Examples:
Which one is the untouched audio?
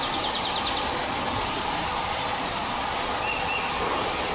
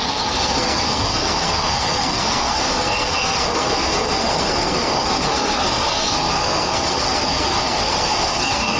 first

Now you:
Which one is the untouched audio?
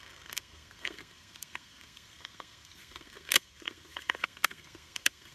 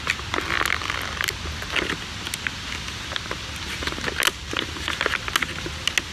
second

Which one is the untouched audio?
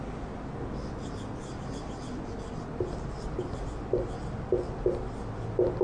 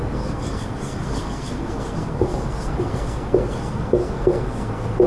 first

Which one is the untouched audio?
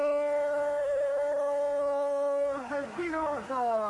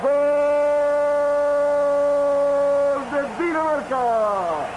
second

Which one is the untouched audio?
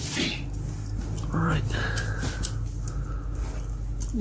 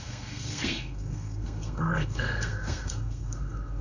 first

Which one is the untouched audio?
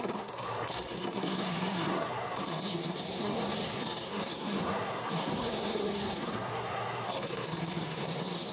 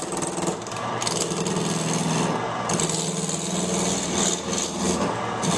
second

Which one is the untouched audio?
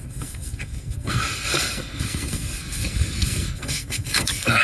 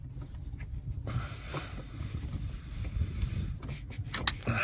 second